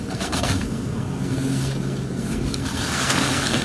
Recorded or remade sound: remade